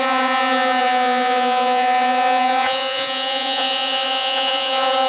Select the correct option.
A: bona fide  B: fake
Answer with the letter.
B